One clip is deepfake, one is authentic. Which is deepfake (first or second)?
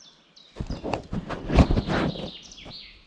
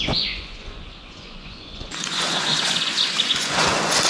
second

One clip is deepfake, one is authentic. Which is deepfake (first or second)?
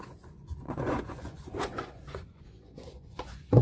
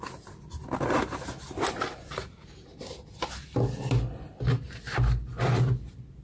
first